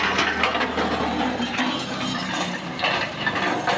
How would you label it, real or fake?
real